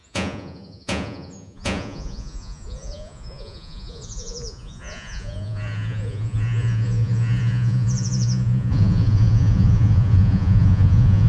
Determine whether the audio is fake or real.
fake